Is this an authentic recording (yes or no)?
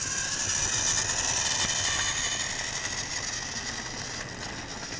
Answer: yes